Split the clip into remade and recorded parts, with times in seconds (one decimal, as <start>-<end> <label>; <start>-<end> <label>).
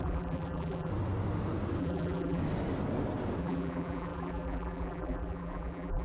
0.0-0.9 remade; 0.9-1.8 recorded; 1.8-2.4 remade; 2.4-3.4 recorded; 3.4-6.0 remade